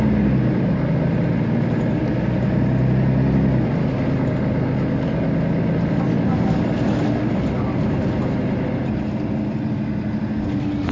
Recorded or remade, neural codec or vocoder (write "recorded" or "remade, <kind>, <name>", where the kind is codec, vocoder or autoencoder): recorded